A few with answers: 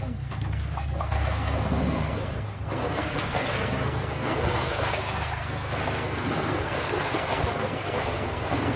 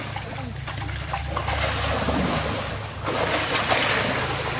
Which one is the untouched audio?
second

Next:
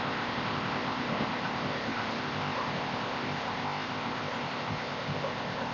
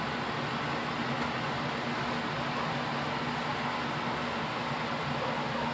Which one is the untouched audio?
second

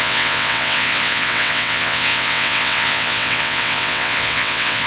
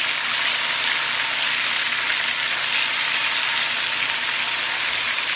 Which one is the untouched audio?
second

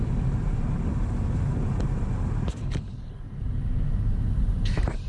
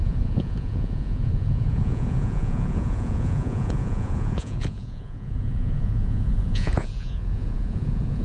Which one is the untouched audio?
first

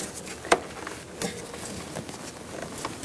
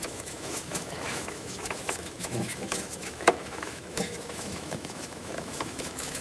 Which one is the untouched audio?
first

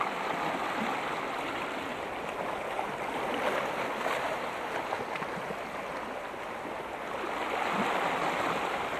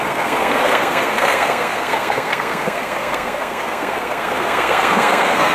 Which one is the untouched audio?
first